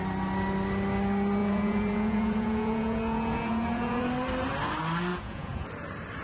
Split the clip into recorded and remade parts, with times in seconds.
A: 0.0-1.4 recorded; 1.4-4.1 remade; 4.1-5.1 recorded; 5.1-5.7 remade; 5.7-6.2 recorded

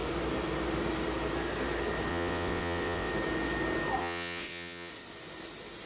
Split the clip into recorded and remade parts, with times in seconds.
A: 0.0-2.1 recorded; 2.1-3.1 remade; 3.1-4.0 recorded; 4.0-4.9 remade; 4.9-5.9 recorded

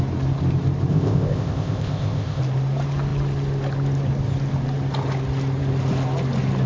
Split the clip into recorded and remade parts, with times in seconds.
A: 0.0-0.9 recorded; 0.9-2.4 remade; 2.4-6.7 recorded

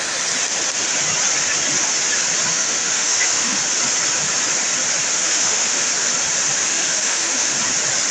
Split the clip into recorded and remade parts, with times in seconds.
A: 0.0-2.5 recorded; 2.5-3.6 remade; 3.6-5.2 recorded; 5.2-5.9 remade; 5.9-6.6 recorded; 6.6-7.5 remade; 7.5-8.1 recorded

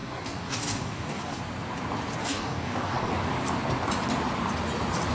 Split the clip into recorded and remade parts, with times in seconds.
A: 0.0-1.4 remade; 1.4-2.2 recorded; 2.2-3.1 remade; 3.1-5.1 recorded

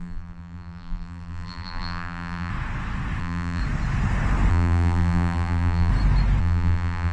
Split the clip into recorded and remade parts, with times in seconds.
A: 0.0-2.5 remade; 2.5-3.2 recorded; 3.2-3.6 remade; 3.6-4.5 recorded; 4.5-5.9 remade; 5.9-6.4 recorded; 6.4-7.1 remade